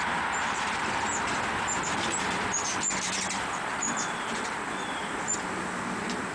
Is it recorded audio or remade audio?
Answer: remade